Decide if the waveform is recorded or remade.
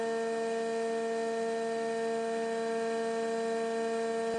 recorded